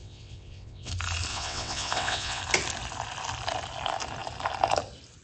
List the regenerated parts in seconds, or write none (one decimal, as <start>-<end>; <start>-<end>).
0.0-0.9; 1.3-2.4